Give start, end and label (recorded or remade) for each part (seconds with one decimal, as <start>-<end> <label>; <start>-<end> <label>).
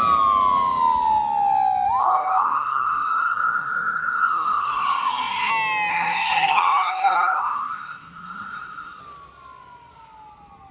0.0-2.0 recorded; 2.0-5.5 remade; 5.5-5.9 recorded; 5.9-9.0 remade; 9.0-10.7 recorded